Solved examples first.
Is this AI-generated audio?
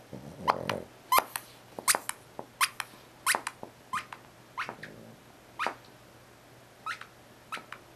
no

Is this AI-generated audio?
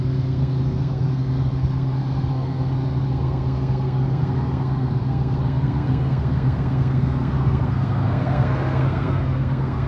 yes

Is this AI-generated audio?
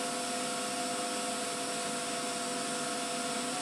no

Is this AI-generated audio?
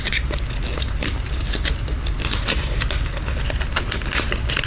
no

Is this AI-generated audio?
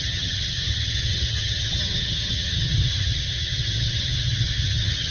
yes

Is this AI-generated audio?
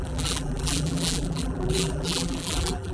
yes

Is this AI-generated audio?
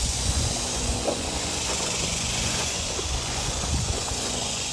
yes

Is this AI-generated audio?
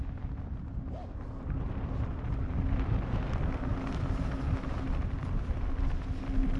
no